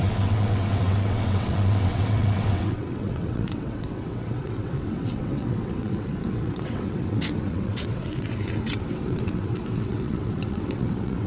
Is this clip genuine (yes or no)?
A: no